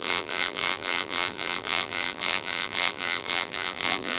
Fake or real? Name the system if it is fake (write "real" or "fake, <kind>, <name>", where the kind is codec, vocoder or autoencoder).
fake, vocoder, BigVGAN v2